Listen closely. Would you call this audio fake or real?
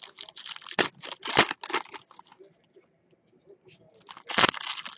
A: real